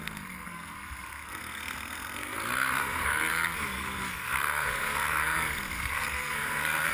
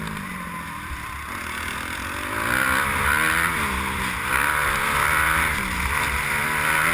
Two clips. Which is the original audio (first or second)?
second